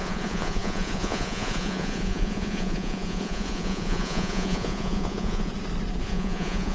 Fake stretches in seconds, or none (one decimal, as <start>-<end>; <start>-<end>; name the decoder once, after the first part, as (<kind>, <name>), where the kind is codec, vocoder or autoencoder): 0.0-5.5 (vocoder, Vocos); 6.0-6.7